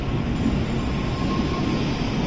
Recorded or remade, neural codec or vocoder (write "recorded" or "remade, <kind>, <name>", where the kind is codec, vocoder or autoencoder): recorded